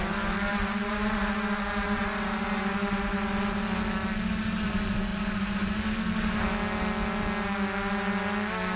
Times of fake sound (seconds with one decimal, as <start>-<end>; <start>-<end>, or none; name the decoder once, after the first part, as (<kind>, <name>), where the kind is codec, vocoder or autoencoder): 0.5-3.6 (vocoder, BigVGAN v2); 5.1-5.9